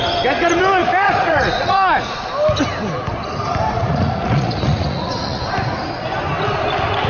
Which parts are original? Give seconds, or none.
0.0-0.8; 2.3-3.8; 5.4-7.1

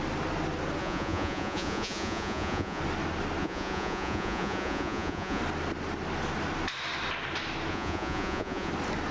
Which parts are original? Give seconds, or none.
0.0-0.8; 2.8-3.4; 5.4-7.7; 8.7-9.1

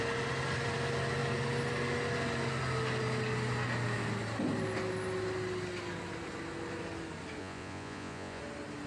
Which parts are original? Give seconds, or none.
0.0-7.4; 8.4-8.9

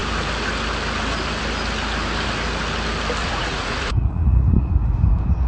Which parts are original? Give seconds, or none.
0.0-3.2; 4.7-5.5

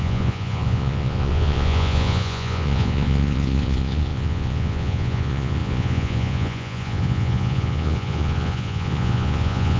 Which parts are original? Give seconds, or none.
none

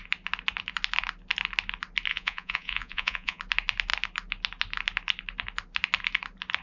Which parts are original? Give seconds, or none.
0.0-2.1; 3.4-6.6